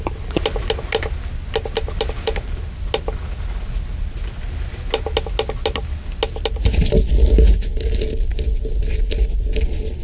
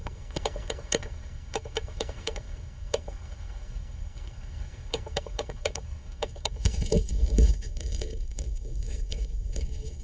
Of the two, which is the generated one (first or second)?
second